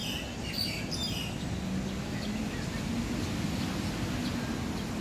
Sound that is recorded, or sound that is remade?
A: recorded